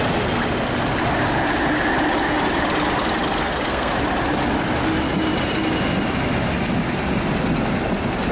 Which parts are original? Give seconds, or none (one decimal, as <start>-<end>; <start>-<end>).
0.0-3.3; 3.9-8.3